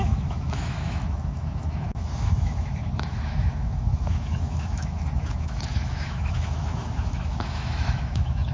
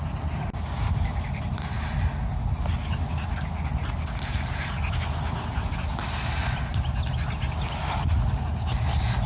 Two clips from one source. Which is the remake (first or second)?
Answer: first